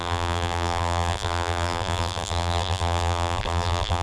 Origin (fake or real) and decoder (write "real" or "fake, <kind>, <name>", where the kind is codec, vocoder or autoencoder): fake, vocoder, BigVGAN v2